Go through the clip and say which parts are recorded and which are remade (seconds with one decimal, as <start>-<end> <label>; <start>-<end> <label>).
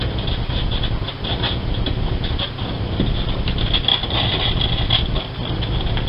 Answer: 0.0-6.1 recorded